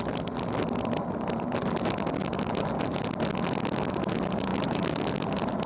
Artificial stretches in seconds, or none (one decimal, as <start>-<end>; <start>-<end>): 2.2-3.0; 4.5-5.0